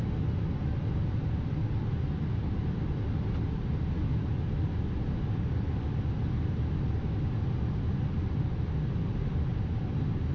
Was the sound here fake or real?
real